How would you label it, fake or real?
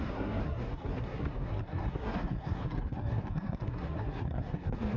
fake